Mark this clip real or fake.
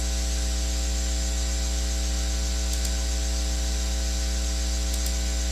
real